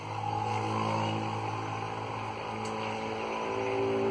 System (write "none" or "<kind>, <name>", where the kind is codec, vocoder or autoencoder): none